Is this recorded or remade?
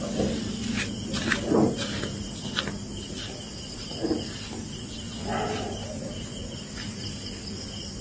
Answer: recorded